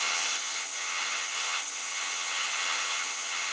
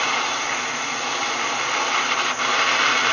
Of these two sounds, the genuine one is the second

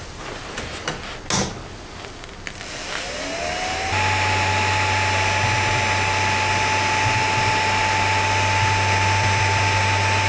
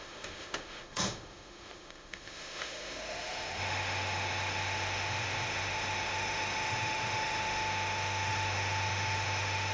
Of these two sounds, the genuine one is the first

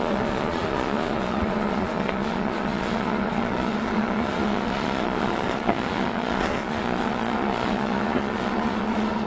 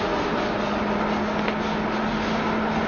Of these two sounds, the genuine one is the second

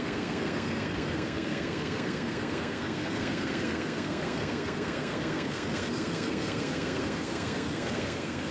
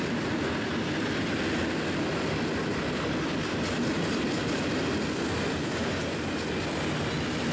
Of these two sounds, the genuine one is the second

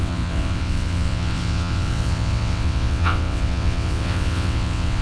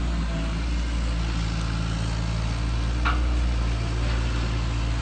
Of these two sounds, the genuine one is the second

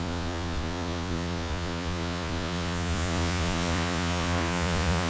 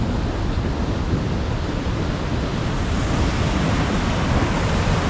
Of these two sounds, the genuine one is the second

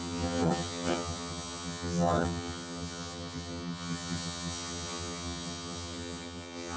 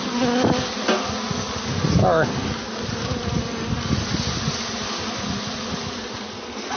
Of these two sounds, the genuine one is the second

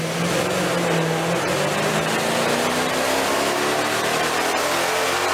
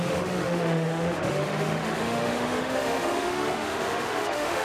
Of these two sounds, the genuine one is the first